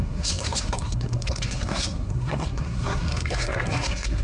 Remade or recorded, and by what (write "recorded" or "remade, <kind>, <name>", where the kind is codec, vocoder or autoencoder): remade, codec, SNAC